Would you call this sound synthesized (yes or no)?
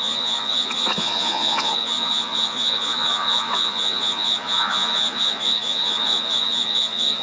yes